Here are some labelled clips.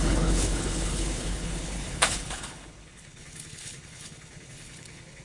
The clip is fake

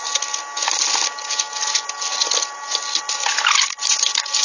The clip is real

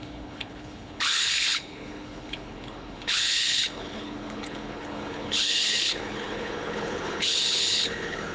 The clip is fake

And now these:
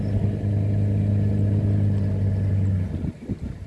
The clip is real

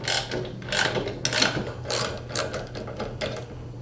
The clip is real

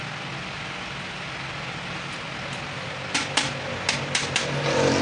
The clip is real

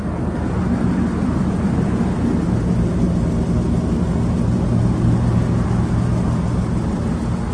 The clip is real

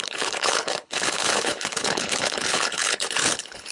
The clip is fake